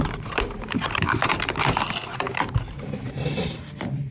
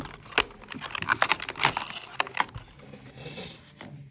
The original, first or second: second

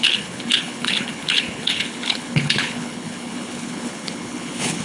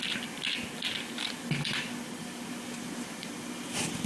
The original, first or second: second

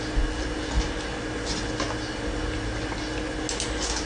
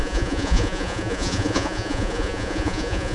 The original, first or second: first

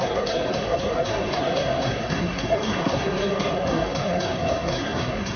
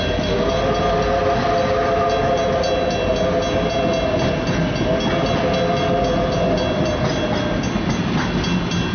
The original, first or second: second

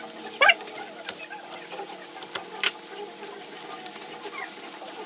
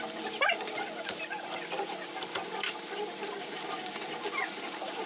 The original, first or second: first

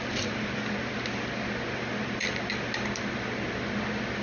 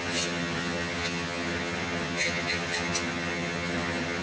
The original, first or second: first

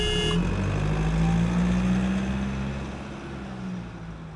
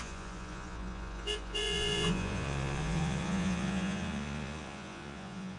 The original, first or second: first